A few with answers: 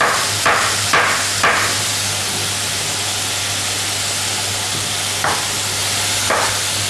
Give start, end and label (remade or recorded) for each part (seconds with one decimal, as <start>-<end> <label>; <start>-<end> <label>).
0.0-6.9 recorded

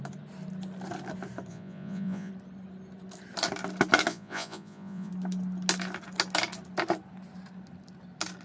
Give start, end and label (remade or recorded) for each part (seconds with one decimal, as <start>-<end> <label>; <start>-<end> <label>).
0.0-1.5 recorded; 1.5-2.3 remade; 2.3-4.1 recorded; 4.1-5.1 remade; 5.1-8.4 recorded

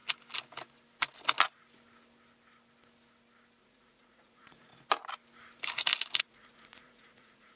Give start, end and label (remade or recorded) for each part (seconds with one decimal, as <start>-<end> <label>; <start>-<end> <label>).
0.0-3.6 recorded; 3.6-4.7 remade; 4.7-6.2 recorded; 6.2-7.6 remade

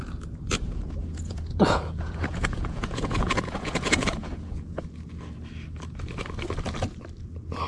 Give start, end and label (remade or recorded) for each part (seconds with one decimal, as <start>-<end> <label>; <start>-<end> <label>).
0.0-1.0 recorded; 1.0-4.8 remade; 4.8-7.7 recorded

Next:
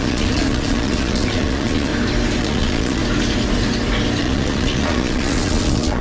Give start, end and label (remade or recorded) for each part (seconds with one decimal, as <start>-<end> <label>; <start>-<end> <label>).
0.0-1.9 remade; 1.9-2.4 recorded; 2.4-3.0 remade; 3.0-4.2 recorded; 4.2-6.0 remade

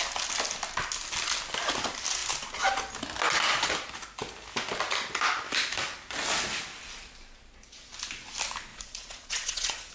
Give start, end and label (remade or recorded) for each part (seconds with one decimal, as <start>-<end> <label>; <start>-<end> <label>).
0.0-8.7 recorded; 8.7-9.9 remade

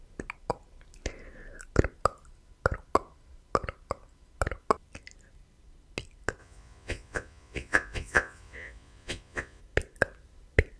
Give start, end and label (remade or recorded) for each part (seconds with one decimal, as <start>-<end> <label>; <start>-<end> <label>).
0.0-6.4 recorded; 6.4-9.6 remade; 9.6-10.8 recorded

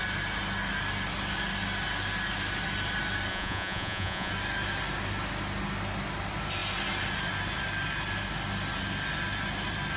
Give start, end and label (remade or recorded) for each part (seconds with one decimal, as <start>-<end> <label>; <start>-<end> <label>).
0.0-3.3 recorded; 3.3-4.3 remade; 4.3-10.0 recorded